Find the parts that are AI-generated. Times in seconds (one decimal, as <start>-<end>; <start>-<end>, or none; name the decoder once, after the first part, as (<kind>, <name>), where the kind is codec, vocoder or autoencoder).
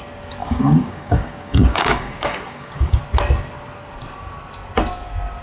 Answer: 0.4-3.0 (codec, DAC)